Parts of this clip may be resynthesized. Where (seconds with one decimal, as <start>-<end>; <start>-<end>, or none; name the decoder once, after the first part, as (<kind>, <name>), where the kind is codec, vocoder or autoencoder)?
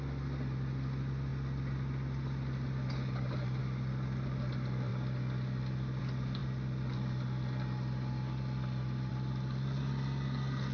none